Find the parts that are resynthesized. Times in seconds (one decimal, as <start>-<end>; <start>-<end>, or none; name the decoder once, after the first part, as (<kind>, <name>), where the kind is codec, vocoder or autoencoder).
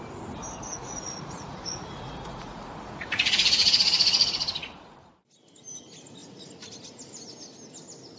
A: 0.7-5.1 (vocoder, Vocos); 6.2-6.7